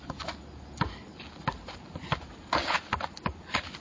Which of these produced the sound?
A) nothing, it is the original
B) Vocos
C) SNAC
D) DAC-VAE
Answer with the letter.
A